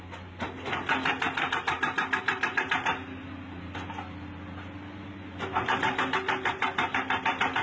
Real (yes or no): yes